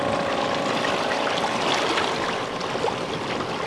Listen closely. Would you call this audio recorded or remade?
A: recorded